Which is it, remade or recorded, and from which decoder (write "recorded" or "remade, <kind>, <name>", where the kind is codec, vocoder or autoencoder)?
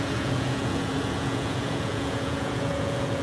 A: remade, vocoder, Vocos